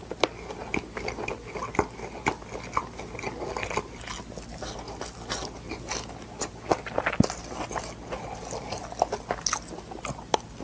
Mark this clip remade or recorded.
recorded